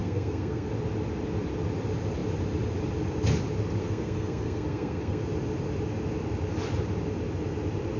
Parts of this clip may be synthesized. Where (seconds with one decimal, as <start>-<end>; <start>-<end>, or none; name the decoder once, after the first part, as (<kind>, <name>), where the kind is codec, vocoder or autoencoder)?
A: 0.0-0.7 (codec, SNAC); 3.8-5.2